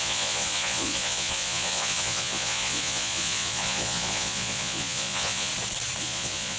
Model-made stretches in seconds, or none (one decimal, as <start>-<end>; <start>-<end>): 0.0-5.5; 6.0-6.6